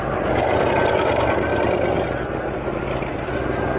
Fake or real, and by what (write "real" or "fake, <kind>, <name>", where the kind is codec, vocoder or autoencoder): real